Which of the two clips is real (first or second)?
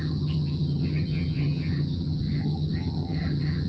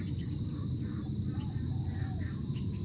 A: second